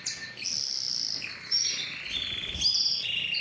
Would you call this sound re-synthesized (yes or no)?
no